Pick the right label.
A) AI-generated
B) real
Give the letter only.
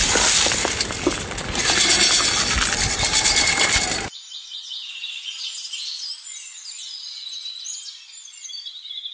B